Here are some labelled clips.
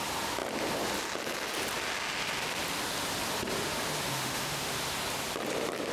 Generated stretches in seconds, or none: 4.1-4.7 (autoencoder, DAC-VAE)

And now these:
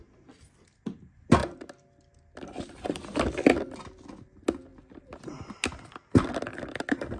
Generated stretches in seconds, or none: none

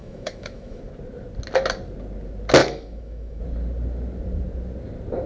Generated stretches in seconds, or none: 0.0-0.8 (autoencoder, DAC-VAE); 2.6-3.4

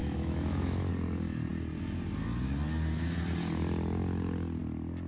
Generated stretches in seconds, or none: 0.0-0.9 (autoencoder, DAC-VAE)

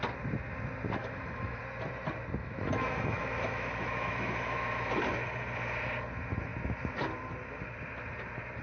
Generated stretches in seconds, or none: 1.0-1.6 (autoencoder, DAC-VAE); 2.4-4.9

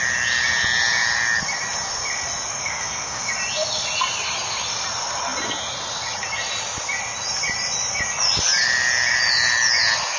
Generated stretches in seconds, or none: 2.6-3.3 (autoencoder, DAC-VAE)